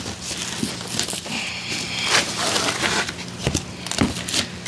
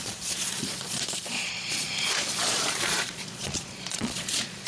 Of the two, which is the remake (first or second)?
second